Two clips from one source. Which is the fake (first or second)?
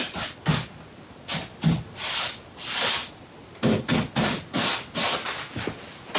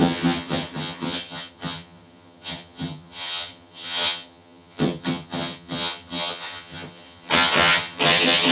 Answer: second